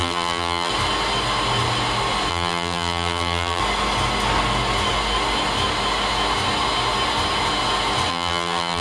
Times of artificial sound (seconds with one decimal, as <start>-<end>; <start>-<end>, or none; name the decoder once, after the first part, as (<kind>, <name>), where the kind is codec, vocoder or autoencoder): 0.0-0.7 (vocoder, BigVGAN v2); 2.3-3.6; 8.1-8.8